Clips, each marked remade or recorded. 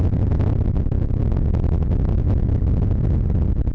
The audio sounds recorded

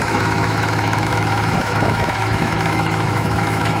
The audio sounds remade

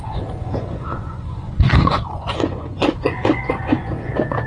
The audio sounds remade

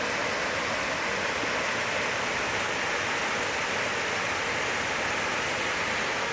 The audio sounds recorded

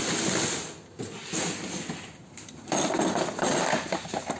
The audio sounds recorded